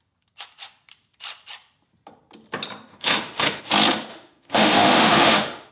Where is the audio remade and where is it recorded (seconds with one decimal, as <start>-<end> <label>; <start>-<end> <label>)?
0.0-2.9 recorded; 2.9-3.6 remade; 3.6-4.1 recorded; 4.1-5.7 remade